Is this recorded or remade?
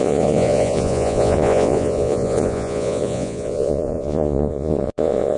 remade